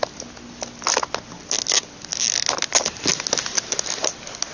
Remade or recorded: recorded